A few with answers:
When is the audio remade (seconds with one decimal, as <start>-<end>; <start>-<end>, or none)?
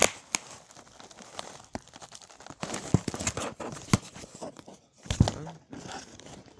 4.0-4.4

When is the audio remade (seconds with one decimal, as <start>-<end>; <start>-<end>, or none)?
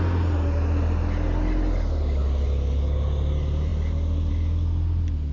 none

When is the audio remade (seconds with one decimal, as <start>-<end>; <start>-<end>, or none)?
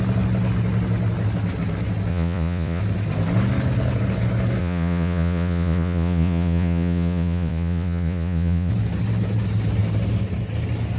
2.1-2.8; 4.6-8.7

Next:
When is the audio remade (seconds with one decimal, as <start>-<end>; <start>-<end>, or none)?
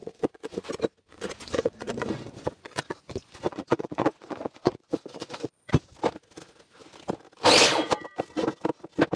0.0-0.7; 1.1-5.7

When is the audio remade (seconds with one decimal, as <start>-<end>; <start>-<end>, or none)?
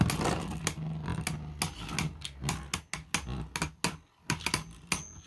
none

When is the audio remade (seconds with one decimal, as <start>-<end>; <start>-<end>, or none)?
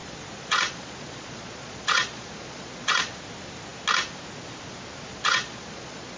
0.0-3.2; 5.1-6.2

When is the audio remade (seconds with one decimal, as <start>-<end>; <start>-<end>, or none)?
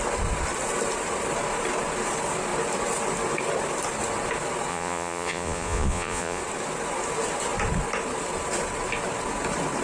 4.7-6.4